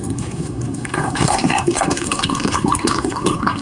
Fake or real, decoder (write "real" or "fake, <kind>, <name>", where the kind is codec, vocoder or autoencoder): fake, codec, SNAC